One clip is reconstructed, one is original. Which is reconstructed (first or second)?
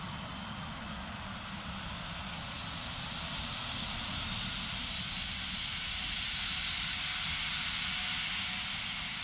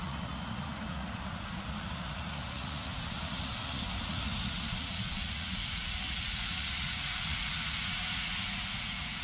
second